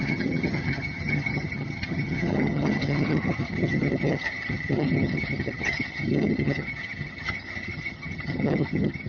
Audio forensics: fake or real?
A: fake